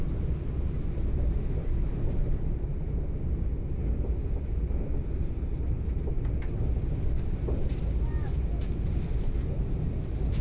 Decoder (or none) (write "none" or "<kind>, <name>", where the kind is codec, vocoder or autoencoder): none